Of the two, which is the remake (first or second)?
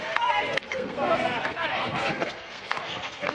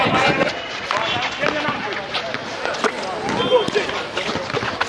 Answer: first